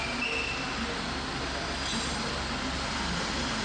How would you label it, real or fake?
real